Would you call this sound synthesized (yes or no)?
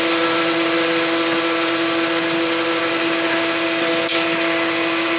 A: no